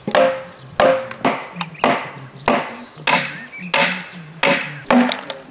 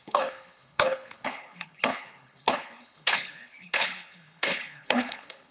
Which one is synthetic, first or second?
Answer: second